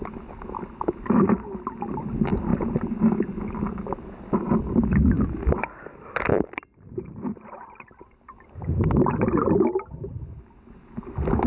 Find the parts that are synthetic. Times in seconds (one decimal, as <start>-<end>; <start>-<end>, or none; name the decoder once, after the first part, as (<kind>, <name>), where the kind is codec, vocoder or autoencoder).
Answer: none